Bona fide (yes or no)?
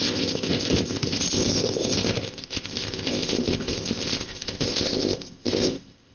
no